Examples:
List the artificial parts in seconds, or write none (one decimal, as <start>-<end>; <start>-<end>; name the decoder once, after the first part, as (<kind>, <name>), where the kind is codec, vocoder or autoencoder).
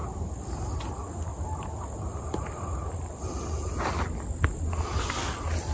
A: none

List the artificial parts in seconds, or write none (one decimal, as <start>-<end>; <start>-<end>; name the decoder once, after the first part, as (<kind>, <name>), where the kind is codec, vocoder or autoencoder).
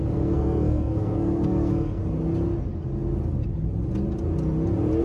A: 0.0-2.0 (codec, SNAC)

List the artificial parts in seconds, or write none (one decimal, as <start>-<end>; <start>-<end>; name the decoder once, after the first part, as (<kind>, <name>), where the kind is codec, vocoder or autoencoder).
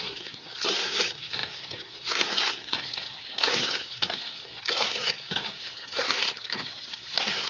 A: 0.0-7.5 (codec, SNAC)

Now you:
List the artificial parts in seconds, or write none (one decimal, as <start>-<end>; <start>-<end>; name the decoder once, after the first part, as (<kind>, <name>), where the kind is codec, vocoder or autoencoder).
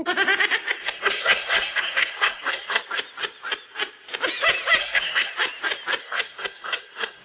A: 0.8-2.8 (codec, SNAC); 4.8-5.3; 6.0-7.2